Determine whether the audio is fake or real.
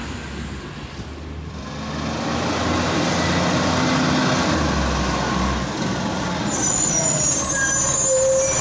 real